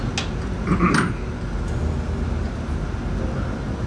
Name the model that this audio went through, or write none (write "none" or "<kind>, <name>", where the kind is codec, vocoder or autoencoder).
none